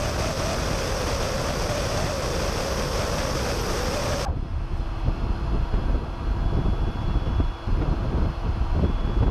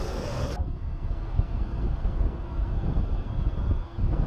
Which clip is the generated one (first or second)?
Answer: second